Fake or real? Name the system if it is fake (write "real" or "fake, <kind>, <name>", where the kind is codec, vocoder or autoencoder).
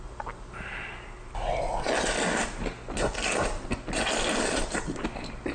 real